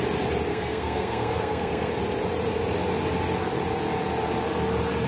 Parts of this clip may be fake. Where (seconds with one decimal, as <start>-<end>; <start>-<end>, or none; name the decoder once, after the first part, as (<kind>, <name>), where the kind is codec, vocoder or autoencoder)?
0.5-1.9 (codec, SNAC)